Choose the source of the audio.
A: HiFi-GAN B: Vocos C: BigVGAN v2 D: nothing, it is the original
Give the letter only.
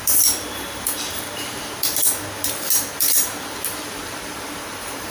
C